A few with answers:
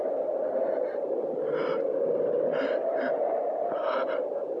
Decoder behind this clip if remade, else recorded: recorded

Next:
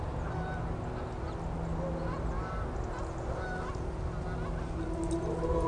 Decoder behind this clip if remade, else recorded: recorded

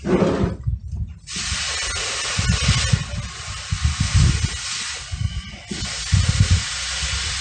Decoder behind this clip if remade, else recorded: recorded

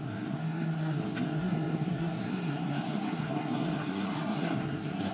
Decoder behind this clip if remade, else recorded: remade, codec, SNAC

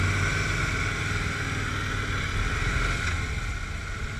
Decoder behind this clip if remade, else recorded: recorded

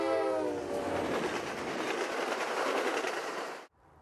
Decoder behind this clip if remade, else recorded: recorded